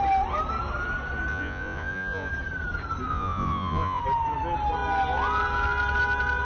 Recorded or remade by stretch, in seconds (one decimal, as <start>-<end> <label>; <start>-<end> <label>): 0.0-1.3 recorded; 1.3-2.3 remade; 2.3-3.1 recorded; 3.1-4.0 remade; 4.0-6.4 recorded

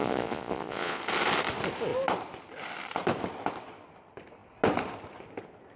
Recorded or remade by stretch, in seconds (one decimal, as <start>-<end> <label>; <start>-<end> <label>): 0.0-1.0 remade; 1.0-5.8 recorded

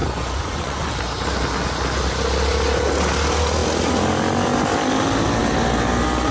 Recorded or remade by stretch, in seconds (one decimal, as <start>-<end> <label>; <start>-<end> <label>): 0.0-0.9 remade; 0.9-6.3 recorded

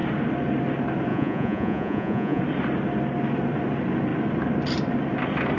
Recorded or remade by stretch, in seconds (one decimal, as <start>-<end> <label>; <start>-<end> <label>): 0.0-1.1 recorded; 1.1-2.4 remade; 2.4-5.6 recorded

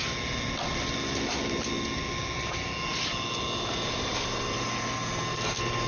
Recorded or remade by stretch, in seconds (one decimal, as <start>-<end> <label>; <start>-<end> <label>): 0.0-5.9 recorded

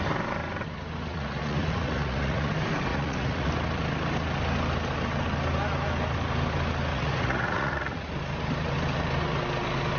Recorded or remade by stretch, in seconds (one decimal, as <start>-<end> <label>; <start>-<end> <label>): 0.0-1.1 recorded; 1.1-2.5 remade; 2.5-2.9 recorded; 2.9-3.5 remade; 3.5-6.9 recorded; 6.9-8.1 remade; 8.1-10.0 recorded

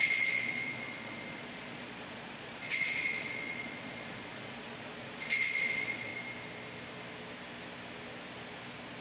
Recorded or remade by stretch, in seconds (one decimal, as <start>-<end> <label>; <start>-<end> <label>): 0.0-6.1 remade; 6.1-9.0 recorded

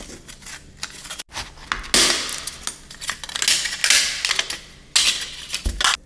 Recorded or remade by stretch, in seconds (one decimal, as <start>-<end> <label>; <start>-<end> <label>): 0.0-6.1 recorded